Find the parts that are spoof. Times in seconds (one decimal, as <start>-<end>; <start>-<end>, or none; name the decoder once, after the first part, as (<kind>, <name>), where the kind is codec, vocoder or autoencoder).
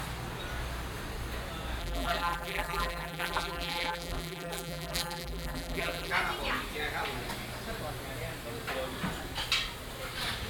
1.8-6.1 (vocoder, BigVGAN v2)